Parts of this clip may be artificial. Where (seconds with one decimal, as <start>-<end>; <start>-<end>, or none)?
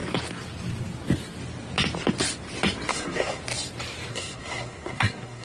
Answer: 2.9-3.4; 4.1-5.4